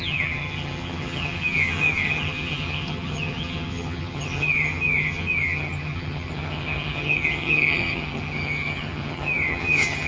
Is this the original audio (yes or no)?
no